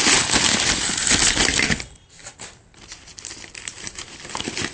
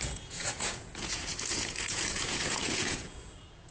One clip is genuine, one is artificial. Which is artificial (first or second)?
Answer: second